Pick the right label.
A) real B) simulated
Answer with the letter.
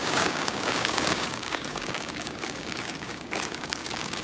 B